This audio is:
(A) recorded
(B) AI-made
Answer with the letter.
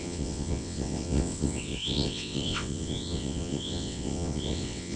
B